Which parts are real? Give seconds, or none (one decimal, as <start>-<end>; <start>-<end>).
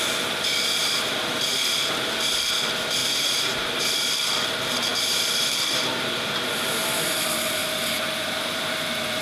0.0-0.8; 2.2-3.0; 4.1-4.9; 6.1-7.6